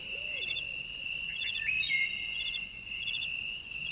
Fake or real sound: fake